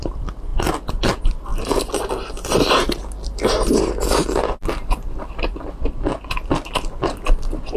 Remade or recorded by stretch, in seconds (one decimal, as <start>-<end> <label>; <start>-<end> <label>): 0.0-7.8 recorded